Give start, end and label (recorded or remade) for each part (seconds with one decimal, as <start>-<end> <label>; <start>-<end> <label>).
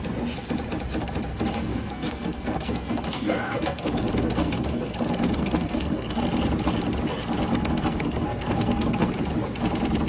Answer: 0.0-1.3 recorded; 1.3-6.2 remade; 6.2-7.5 recorded; 7.5-9.1 remade; 9.1-10.1 recorded